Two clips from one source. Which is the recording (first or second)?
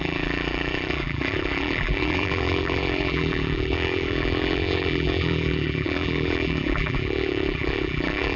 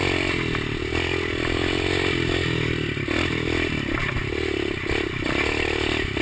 second